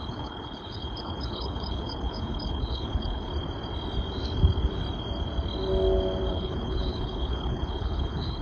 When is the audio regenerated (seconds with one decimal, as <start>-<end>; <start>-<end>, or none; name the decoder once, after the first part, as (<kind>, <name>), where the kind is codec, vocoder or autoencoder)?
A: 0.0-3.3 (codec, HILCodec); 6.3-8.4